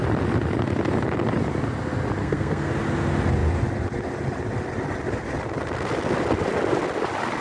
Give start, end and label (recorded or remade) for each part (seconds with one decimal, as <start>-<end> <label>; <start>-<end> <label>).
0.0-2.2 recorded; 2.2-2.7 remade; 2.7-7.4 recorded